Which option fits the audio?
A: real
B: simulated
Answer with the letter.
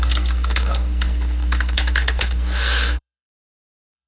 B